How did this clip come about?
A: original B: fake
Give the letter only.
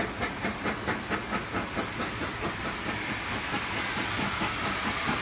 A